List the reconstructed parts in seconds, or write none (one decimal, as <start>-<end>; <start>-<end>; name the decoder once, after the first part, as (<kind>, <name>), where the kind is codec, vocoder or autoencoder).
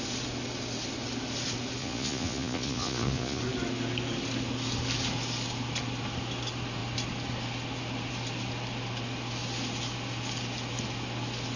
1.8-3.4 (vocoder, Vocos)